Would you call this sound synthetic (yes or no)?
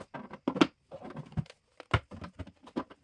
no